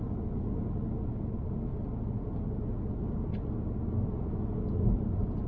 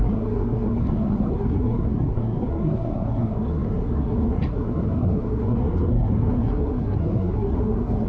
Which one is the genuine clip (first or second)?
first